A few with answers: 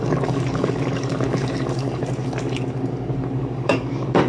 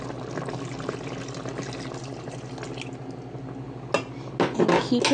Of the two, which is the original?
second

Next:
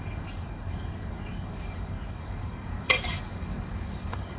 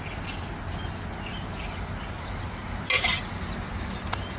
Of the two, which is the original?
second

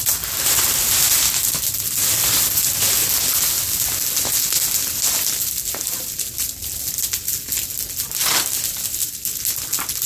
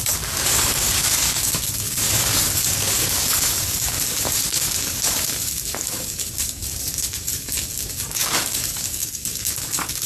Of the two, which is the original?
first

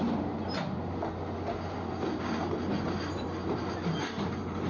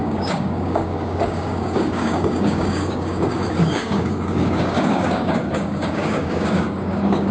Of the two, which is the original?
first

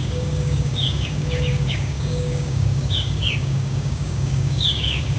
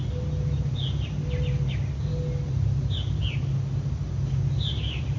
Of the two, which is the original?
second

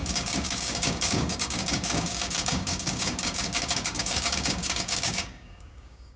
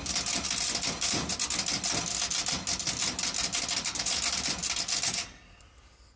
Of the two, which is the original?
second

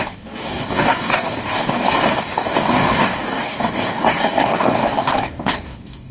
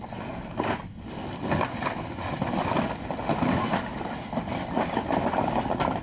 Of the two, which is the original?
second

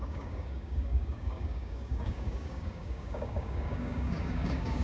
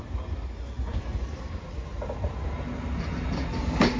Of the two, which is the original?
second